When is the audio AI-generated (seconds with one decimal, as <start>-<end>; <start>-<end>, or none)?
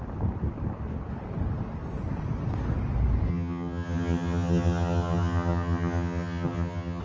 3.3-7.0